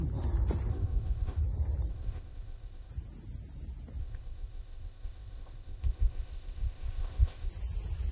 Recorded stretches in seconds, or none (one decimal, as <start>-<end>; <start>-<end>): 0.0-0.7; 1.4-1.9; 2.9-4.0; 7.5-8.1